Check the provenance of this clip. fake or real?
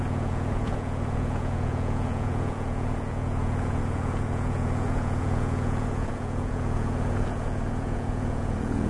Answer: fake